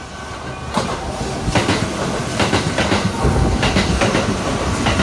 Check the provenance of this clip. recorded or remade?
recorded